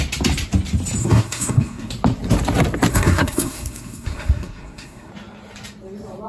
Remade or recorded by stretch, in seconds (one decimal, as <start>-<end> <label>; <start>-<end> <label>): 0.0-1.0 recorded; 1.0-1.9 remade; 1.9-2.9 recorded; 2.9-5.1 remade; 5.1-6.3 recorded